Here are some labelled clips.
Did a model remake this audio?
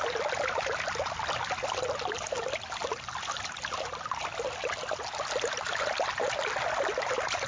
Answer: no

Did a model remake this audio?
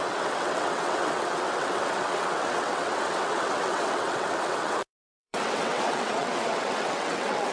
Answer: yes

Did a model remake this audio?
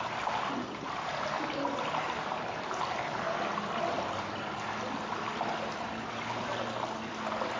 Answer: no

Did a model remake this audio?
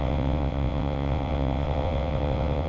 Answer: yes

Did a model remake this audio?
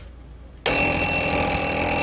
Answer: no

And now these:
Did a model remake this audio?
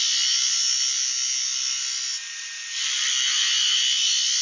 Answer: no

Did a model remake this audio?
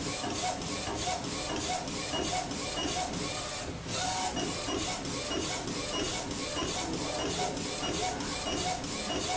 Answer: no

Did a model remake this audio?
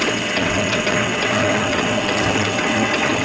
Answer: yes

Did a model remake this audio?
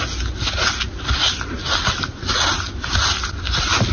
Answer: no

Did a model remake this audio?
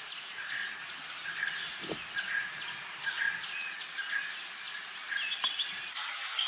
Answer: no